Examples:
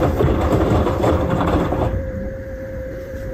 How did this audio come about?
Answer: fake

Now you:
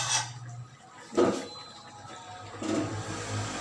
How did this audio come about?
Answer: real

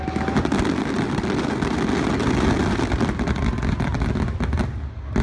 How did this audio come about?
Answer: real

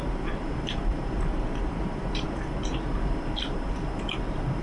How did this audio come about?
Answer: fake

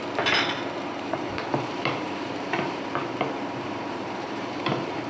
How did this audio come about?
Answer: fake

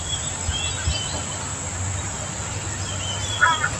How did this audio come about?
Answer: real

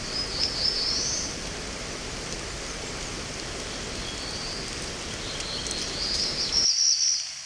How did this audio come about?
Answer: real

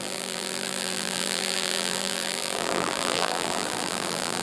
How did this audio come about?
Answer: fake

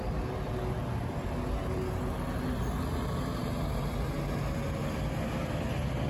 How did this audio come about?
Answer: real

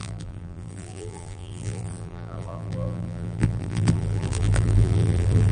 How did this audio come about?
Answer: fake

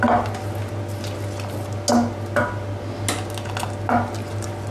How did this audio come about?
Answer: real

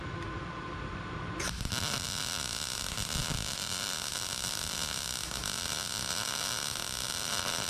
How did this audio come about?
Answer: fake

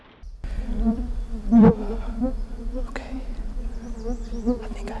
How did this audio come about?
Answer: fake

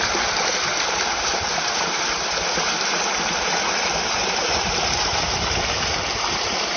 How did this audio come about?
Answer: fake